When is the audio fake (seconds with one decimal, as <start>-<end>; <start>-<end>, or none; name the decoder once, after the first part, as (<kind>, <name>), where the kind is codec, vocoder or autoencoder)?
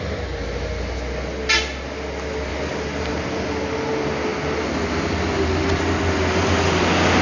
none